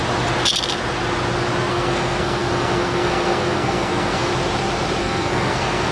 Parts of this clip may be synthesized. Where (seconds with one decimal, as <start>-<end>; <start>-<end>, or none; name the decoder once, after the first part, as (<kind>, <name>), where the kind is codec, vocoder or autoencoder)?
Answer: 1.7-4.3 (codec, SNAC); 5.0-5.9